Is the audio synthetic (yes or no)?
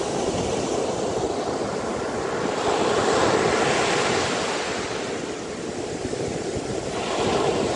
no